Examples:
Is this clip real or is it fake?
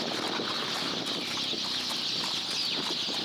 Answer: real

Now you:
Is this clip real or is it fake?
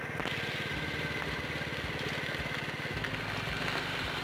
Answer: real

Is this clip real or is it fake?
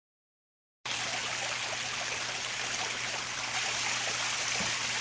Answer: real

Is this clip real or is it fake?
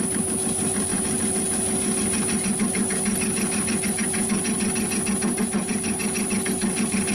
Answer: real